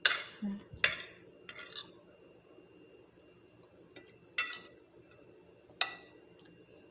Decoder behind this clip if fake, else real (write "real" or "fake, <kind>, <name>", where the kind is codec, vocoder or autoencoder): real